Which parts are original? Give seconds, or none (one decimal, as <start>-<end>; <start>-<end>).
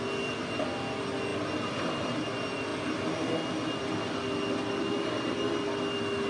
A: 0.0-6.3